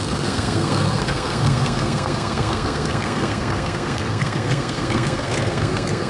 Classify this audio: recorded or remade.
remade